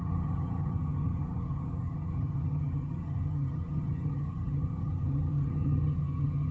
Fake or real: fake